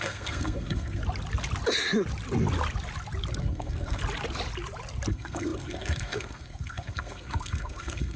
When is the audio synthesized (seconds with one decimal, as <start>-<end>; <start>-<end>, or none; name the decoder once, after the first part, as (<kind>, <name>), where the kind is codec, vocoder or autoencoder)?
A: 0.0-1.0 (codec, SNAC); 3.4-4.0; 5.1-8.2